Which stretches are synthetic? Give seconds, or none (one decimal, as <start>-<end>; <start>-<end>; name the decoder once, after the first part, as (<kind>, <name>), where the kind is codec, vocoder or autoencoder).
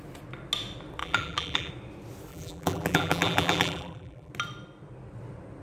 1.0-1.7 (vocoder, BigVGAN v2); 2.3-4.3